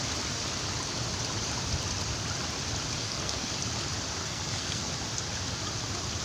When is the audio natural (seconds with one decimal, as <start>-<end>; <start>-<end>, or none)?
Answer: 0.0-3.0; 3.5-4.2; 4.9-6.2